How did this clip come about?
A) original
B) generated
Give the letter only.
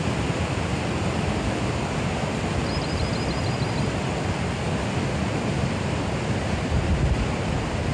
A